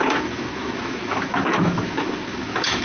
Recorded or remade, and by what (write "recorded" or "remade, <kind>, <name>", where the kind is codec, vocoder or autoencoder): remade, autoencoder, DAC-VAE